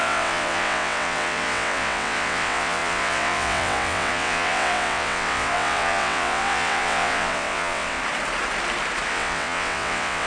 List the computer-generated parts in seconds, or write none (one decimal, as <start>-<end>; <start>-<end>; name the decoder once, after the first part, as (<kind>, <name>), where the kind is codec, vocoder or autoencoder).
0.0-8.0 (vocoder, WaveNeXt); 9.1-10.3

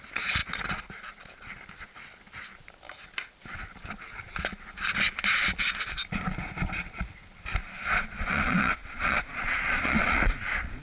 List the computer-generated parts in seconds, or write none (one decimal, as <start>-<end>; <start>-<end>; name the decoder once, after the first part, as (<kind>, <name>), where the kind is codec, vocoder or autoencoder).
7.6-10.8 (vocoder, Vocos)

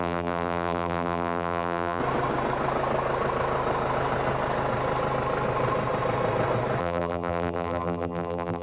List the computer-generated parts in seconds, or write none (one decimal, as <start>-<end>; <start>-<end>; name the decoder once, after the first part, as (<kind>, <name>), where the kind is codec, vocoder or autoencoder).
0.0-2.0 (vocoder, BigVGAN v2); 6.8-8.6

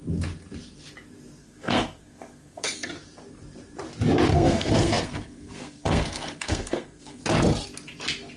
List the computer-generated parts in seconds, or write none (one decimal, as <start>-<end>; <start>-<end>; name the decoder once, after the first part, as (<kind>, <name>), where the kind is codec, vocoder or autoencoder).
1.4-2.9 (codec, SNAC); 4.3-7.2

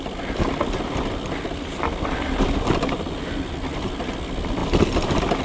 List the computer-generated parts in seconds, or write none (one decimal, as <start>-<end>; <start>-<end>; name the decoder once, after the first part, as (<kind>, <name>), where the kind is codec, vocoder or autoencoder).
none

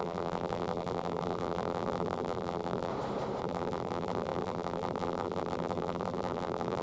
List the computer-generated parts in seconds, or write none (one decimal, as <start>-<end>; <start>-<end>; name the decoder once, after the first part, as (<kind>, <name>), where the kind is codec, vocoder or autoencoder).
0.0-2.9 (vocoder, BigVGAN v2); 3.4-6.8